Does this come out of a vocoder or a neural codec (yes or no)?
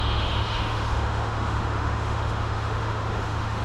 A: yes